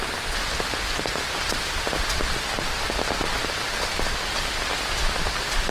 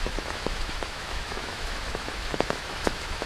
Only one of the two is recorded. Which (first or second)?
first